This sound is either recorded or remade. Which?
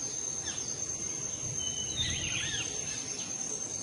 recorded